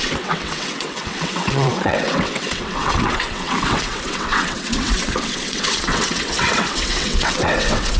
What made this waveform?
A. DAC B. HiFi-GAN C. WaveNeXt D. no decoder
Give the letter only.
C